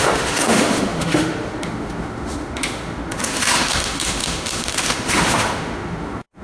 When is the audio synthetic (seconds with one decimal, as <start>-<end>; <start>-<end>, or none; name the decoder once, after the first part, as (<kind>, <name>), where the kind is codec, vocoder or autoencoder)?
0.0-6.4 (autoencoder, DAC-VAE)